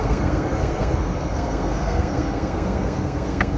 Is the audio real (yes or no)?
no